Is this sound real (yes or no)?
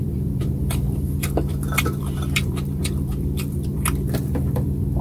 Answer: no